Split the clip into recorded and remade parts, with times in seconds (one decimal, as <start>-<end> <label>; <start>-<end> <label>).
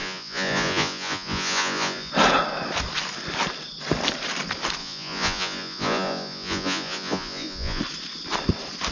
0.0-2.1 remade; 2.1-4.8 recorded; 4.8-7.8 remade; 7.8-8.9 recorded